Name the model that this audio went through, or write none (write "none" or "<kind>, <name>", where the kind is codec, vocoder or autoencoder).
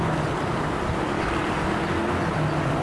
none